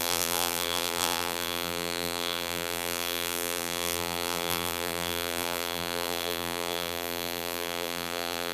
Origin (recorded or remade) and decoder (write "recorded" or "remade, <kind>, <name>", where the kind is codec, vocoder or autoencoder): remade, vocoder, BigVGAN v2